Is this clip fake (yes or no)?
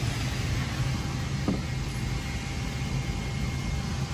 no